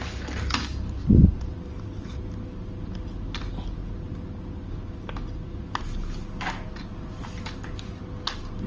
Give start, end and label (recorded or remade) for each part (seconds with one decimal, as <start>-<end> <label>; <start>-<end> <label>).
0.0-8.7 recorded